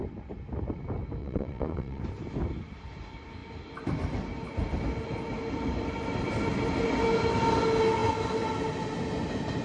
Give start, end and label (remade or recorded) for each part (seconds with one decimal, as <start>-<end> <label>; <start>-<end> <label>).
0.0-1.2 recorded; 1.2-2.0 remade; 2.0-9.6 recorded